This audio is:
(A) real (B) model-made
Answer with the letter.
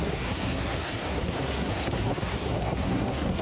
B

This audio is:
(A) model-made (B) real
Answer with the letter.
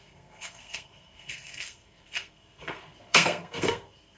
A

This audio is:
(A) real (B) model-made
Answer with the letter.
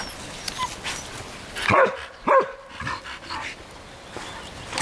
A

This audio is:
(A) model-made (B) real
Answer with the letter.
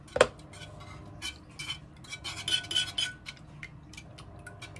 B